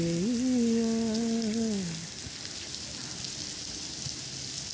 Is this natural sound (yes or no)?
yes